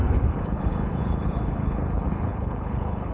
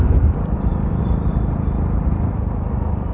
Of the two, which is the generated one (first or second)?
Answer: first